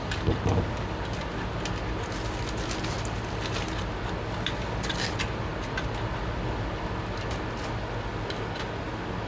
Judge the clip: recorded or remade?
recorded